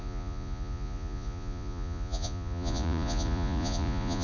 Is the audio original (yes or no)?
no